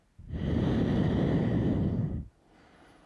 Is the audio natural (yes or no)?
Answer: no